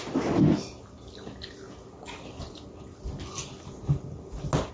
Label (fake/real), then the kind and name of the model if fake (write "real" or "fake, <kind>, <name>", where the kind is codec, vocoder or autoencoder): real